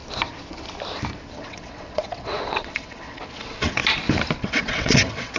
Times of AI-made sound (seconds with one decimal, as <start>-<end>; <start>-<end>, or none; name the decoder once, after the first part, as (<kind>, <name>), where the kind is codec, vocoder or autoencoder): 1.3-3.8 (vocoder, WaveNeXt); 4.4-5.4